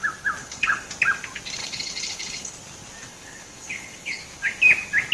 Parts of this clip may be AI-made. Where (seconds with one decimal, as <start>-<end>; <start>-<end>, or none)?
0.4-0.9; 1.6-2.5; 3.1-4.2